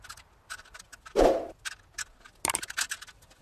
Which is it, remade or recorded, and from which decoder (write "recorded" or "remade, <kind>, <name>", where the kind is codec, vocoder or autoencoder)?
recorded